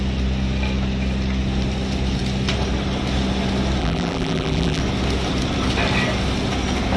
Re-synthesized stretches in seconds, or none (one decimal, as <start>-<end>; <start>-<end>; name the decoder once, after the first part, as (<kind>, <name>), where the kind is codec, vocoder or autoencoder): 3.8-4.8 (vocoder, BigVGAN v2)